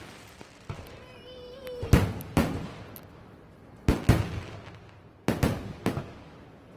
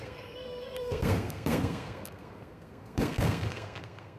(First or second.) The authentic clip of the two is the first